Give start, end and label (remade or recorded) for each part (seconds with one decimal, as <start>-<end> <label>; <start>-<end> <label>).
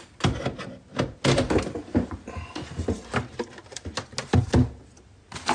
0.0-5.5 recorded